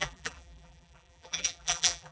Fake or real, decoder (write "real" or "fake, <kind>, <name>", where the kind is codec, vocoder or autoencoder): fake, vocoder, BigVGAN v2